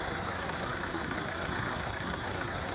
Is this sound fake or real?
fake